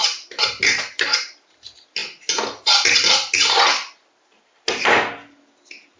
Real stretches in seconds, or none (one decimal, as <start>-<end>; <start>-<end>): 0.0-6.0